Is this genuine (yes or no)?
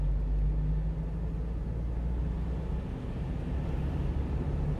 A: yes